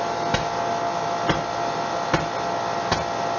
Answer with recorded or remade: recorded